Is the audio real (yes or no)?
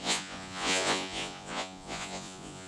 no